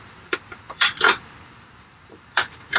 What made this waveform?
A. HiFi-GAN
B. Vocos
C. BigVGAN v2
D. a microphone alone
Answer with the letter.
C